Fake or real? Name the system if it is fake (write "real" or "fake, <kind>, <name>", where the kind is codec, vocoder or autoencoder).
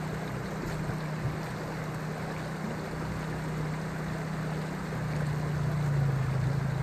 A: real